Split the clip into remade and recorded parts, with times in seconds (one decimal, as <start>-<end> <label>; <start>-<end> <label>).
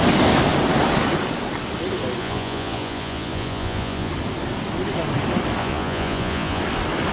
0.0-2.2 recorded; 2.2-4.1 remade; 4.1-5.6 recorded; 5.6-6.6 remade; 6.6-7.1 recorded